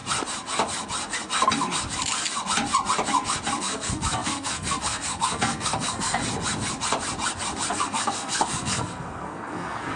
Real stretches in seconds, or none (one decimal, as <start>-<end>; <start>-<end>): 0.0-3.6; 6.2-7.7